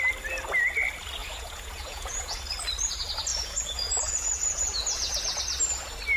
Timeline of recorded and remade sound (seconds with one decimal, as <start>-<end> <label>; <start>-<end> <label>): 0.0-1.2 recorded; 1.2-2.4 remade; 2.4-3.3 recorded; 3.3-5.4 remade; 5.4-6.2 recorded